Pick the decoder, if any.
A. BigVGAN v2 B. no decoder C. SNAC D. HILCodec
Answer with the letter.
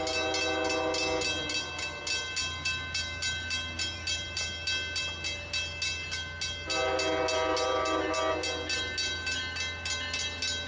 B